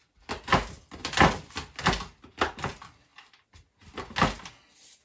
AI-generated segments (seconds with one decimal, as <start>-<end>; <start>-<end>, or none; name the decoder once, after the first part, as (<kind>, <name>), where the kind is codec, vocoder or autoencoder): none